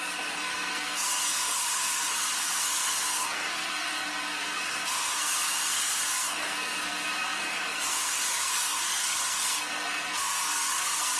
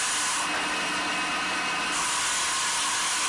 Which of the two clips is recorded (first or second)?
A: second